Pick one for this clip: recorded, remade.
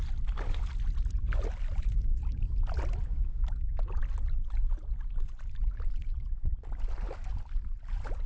recorded